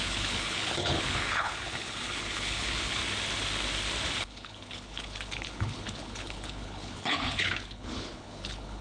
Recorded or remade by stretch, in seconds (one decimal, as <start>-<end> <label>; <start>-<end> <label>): 0.0-3.0 remade; 3.0-4.2 recorded; 4.2-8.8 remade